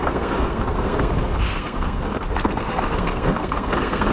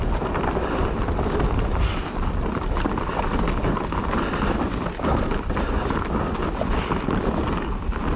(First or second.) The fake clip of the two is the first